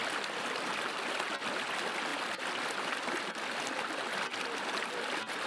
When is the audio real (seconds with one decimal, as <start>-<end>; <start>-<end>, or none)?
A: 0.0-5.5